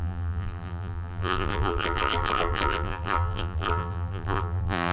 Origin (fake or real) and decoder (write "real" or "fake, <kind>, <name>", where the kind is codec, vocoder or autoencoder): fake, vocoder, BigVGAN v2